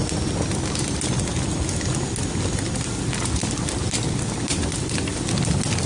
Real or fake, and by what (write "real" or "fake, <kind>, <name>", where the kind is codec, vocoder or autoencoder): real